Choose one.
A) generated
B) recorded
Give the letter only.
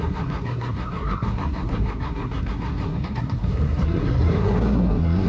A